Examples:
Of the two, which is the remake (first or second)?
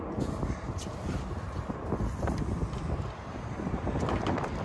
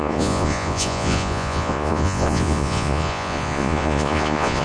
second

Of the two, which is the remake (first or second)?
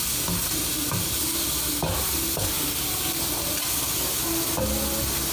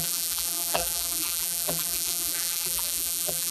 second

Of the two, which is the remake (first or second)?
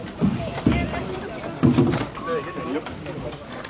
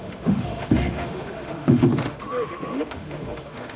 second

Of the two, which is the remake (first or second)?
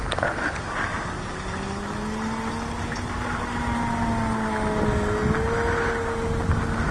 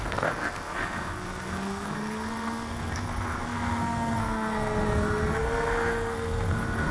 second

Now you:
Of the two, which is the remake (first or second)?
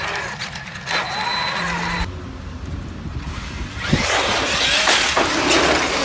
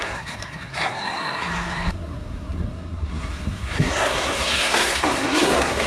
second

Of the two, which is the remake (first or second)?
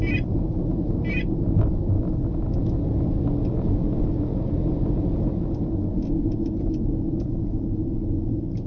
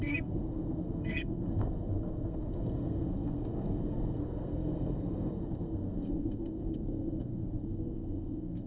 second